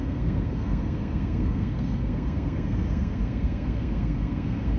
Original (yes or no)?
no